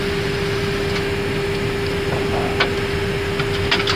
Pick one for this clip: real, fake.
real